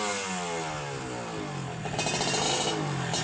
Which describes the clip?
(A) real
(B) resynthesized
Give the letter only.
A